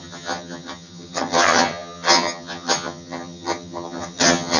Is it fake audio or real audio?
fake